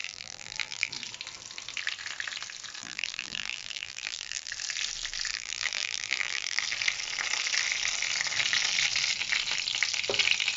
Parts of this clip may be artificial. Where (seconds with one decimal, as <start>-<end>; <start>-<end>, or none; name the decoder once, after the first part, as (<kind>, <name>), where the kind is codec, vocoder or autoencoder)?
0.0-0.9 (vocoder, BigVGAN v2); 2.8-4.5; 5.3-6.6

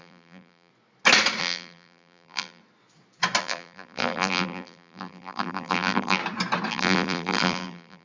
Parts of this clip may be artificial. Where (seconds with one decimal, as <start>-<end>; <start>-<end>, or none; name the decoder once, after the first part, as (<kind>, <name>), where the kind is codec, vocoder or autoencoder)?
0.0-0.7 (vocoder, BigVGAN v2); 1.4-2.6; 3.4-6.2; 6.7-8.0

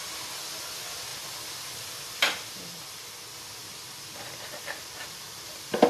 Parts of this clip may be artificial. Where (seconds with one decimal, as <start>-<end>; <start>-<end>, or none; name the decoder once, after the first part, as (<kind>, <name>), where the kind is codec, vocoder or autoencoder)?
1.1-3.1 (vocoder, BigVGAN v2); 3.6-5.9